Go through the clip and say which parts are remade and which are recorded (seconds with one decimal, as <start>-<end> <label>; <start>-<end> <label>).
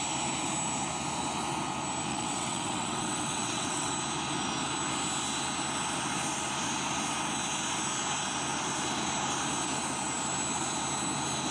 0.0-2.1 recorded; 2.1-3.9 remade; 3.9-11.5 recorded